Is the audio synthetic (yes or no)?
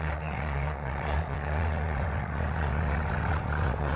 yes